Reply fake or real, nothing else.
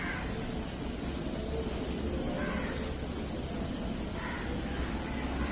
real